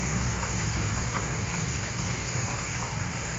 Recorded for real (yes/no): no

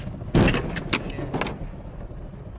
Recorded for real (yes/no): yes